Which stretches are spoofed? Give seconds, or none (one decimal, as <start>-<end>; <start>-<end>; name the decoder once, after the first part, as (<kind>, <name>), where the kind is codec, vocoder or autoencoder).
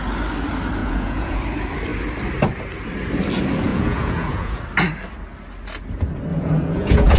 0.8-1.4 (vocoder, Vocos); 3.7-4.6; 6.3-7.2